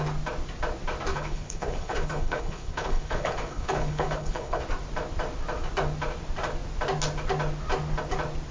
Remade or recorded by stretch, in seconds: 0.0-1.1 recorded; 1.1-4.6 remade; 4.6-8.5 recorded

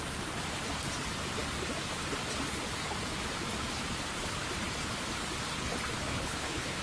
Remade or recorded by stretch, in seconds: 0.0-6.1 recorded; 6.1-6.8 remade